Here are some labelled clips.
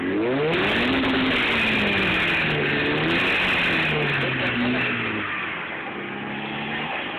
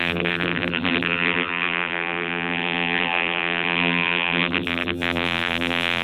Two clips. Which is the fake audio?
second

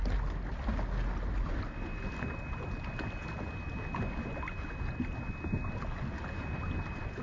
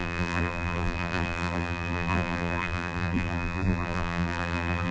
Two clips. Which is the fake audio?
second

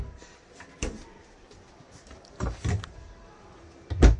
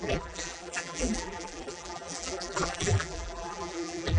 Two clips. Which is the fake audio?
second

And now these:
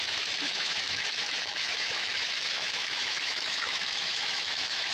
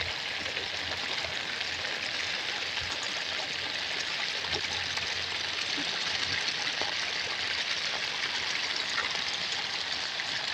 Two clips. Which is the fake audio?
first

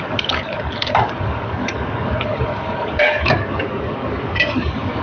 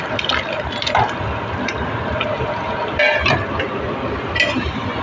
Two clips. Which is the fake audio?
first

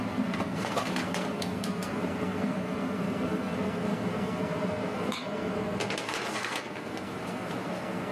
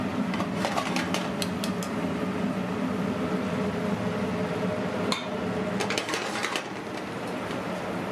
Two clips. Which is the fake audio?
first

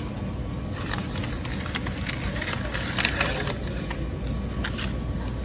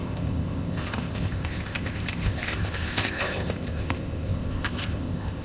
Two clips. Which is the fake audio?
second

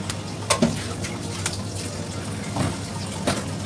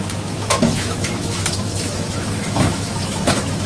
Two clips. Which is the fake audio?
second